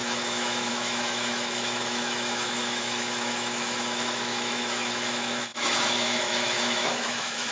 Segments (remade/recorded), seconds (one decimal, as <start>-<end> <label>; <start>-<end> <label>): 0.0-7.5 remade